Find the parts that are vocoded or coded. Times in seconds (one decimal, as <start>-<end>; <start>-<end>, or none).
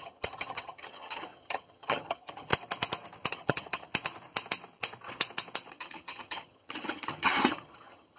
0.0-2.5; 3.3-3.9; 5.7-8.2